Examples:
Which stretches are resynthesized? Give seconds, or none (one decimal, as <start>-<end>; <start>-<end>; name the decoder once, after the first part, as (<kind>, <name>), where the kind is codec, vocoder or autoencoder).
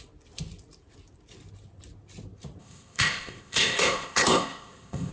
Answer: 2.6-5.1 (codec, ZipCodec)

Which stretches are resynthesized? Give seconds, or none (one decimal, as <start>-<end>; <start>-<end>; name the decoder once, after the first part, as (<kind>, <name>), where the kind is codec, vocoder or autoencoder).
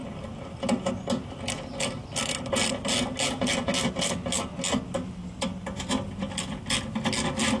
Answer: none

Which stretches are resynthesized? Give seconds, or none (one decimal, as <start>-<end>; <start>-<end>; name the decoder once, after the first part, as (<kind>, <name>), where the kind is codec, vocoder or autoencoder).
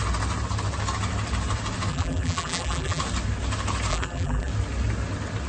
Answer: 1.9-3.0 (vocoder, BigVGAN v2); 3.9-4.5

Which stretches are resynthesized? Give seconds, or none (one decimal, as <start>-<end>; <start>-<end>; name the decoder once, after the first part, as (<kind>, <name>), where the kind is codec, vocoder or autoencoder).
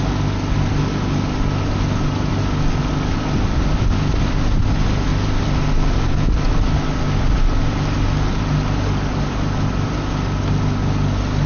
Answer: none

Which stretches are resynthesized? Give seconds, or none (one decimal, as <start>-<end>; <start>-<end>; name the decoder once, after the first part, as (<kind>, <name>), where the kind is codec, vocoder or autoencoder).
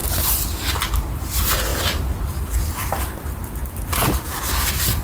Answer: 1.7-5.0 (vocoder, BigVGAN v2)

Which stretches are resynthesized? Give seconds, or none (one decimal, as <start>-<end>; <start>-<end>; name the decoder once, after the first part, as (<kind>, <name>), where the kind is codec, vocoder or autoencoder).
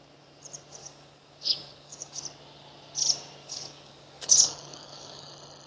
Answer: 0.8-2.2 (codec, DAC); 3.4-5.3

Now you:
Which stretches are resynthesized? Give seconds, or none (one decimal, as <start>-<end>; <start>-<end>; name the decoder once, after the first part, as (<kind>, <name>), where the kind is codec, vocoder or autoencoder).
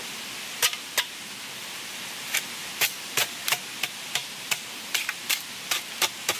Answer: 2.6-5.8 (vocoder, BigVGAN v2)